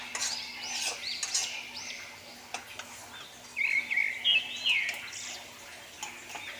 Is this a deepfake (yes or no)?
no